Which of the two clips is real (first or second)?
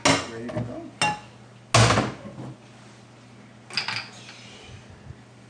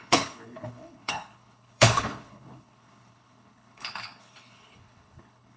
first